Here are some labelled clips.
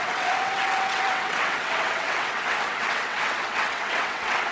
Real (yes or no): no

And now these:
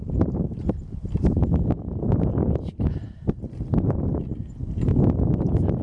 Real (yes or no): yes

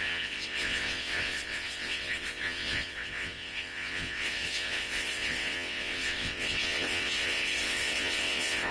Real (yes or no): no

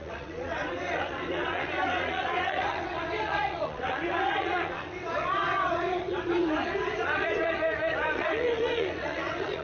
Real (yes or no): no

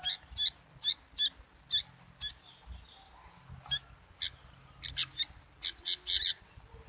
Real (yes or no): yes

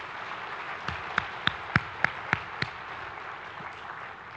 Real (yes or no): yes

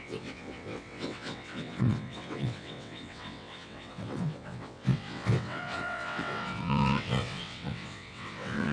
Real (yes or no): no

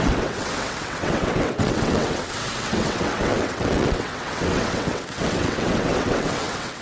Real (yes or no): no